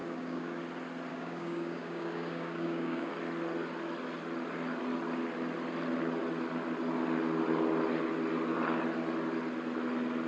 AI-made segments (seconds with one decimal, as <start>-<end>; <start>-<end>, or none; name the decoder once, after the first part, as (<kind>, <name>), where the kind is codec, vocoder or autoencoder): 0.0-0.6 (codec, DAC); 1.1-3.1